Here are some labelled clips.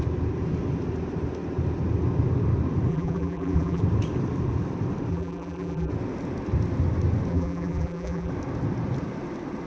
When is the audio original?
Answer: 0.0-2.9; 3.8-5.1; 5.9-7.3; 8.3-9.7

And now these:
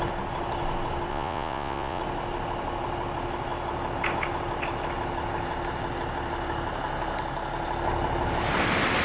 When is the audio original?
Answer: 0.0-1.1; 2.0-9.0

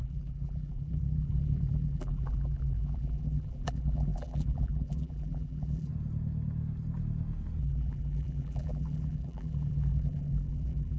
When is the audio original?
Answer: 5.9-7.6

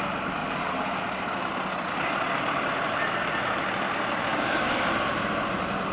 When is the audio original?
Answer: 0.0-4.3; 4.9-5.9

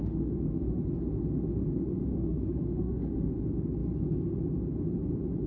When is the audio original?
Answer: 0.8-2.1; 3.3-5.5

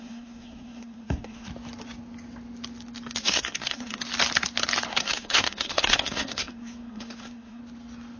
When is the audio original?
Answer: 1.5-3.2; 4.0-4.9; 7.6-8.2